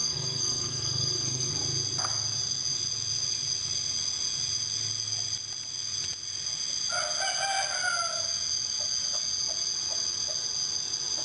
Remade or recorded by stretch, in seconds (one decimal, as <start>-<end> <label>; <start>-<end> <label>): 0.0-1.5 remade; 1.5-11.2 recorded